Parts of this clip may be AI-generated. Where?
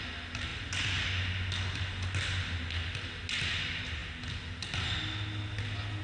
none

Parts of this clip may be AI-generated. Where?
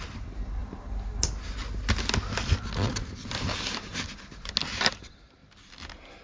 none